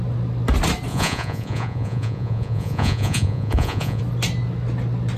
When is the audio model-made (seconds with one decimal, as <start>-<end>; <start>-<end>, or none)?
0.9-4.0